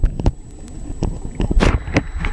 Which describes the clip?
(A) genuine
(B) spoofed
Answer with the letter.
A